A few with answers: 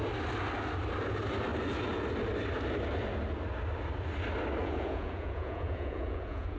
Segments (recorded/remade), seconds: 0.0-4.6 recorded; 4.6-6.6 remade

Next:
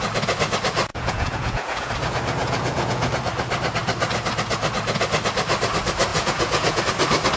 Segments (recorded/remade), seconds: 0.0-0.9 recorded; 0.9-1.9 remade; 1.9-2.4 recorded; 2.4-3.1 remade; 3.1-6.1 recorded; 6.1-6.8 remade; 6.8-7.4 recorded

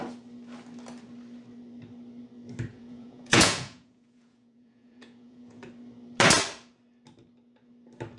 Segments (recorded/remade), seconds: 0.0-2.7 recorded; 2.7-5.6 remade; 5.6-8.2 recorded